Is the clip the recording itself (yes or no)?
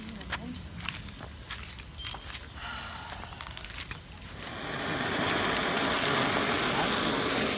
yes